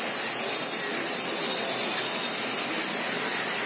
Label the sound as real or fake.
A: real